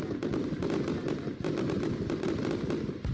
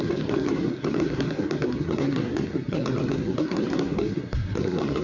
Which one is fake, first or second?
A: second